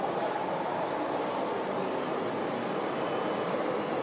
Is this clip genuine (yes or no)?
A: yes